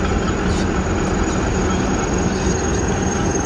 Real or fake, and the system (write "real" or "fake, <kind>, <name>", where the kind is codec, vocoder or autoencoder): real